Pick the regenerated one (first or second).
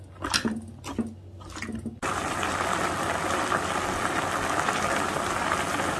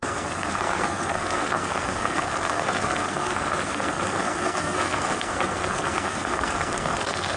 second